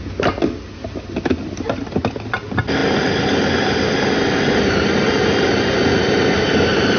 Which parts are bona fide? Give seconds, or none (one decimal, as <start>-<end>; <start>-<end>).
0.0-7.0